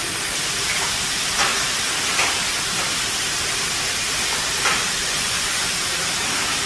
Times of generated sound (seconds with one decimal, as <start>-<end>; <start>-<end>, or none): 5.0-5.7